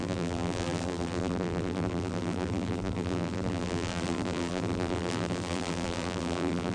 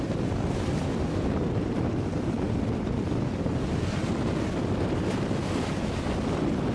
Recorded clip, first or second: second